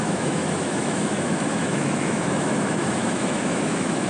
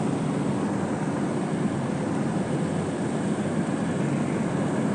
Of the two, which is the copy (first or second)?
first